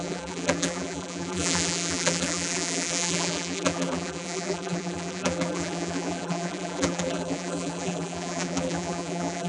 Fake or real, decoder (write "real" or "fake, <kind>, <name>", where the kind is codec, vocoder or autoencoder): fake, vocoder, BigVGAN v2